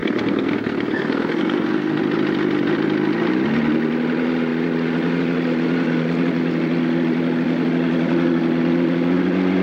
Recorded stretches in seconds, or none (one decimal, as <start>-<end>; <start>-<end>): 2.0-9.6